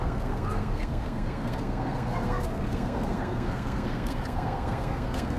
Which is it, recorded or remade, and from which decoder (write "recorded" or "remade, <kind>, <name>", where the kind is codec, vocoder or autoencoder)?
remade, codec, SNAC